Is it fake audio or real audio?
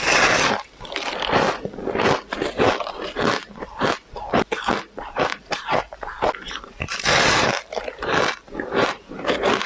real